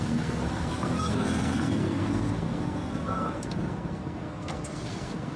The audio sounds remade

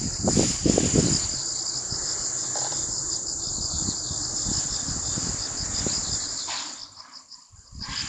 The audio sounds recorded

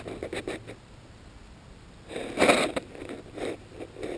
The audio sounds recorded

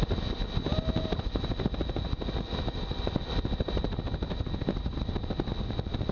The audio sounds recorded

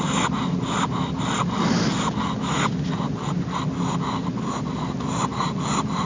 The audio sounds recorded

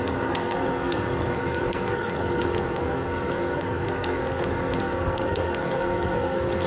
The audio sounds remade